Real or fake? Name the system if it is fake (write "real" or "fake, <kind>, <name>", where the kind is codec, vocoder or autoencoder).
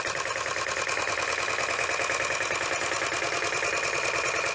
real